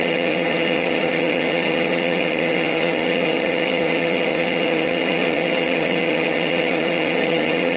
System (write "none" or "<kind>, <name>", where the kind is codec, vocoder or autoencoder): vocoder, HiFi-GAN